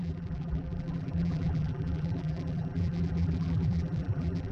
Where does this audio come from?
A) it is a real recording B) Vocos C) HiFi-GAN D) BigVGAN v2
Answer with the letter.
D